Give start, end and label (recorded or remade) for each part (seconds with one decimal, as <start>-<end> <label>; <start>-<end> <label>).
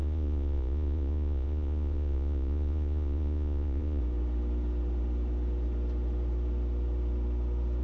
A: 0.0-4.0 remade; 4.0-7.8 recorded